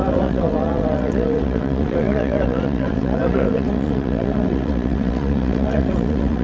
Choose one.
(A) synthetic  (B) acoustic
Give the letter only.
A